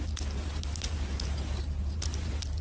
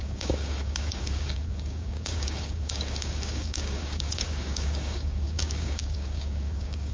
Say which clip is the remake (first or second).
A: second